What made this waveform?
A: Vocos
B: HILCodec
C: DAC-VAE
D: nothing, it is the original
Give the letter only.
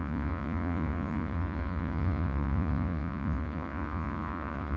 A